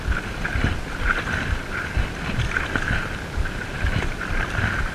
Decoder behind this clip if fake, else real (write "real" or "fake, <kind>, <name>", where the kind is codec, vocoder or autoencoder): real